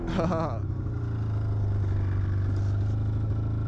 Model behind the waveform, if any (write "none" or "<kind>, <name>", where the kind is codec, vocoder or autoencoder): none